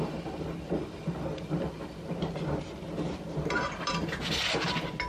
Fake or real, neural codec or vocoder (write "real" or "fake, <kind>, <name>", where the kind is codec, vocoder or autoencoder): real